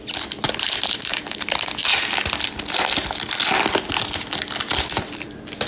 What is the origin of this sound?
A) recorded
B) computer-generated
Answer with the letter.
A